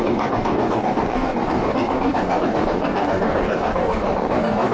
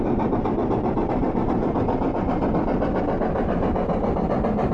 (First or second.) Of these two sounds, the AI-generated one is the first